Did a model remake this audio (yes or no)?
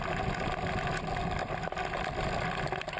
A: no